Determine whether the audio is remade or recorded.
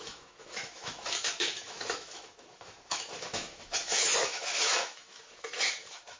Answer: remade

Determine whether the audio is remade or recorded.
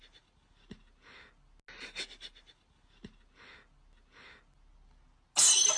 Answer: recorded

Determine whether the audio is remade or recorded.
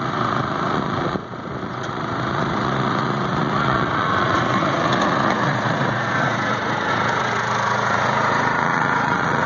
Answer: remade